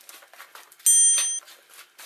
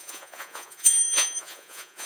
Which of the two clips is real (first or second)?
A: first